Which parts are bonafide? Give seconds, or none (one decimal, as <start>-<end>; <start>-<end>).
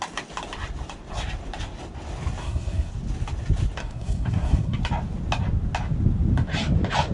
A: 0.0-2.4; 2.9-3.8; 4.8-7.1